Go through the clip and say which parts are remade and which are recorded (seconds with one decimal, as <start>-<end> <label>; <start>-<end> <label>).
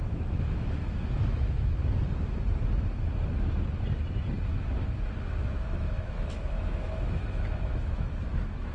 0.0-1.8 remade; 1.8-5.2 recorded; 5.2-8.7 remade